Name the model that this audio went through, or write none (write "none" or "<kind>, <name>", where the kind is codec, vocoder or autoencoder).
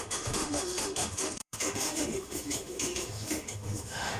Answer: autoencoder, DAC-VAE